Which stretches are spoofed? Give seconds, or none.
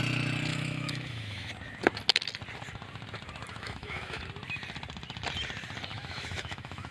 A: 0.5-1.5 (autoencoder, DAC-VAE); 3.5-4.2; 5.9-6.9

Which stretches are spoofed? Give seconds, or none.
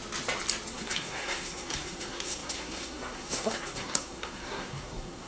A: 0.7-5.3 (codec, SNAC)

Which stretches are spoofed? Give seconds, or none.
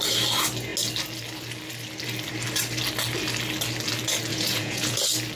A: 4.3-5.0 (vocoder, Vocos)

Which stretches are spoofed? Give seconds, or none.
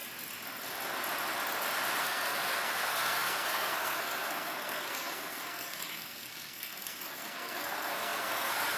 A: 2.0-8.8 (codec, SNAC)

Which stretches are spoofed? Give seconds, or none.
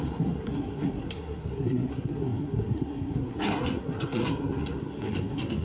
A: 0.0-5.6 (codec, SNAC)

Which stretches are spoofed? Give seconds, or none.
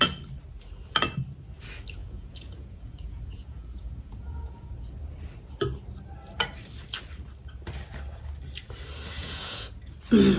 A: 2.0-4.7 (vocoder, Vocos); 9.2-9.8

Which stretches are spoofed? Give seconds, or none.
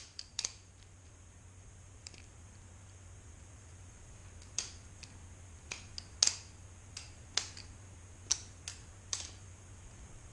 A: 0.0-4.2 (vocoder, BigVGAN v2); 9.1-10.3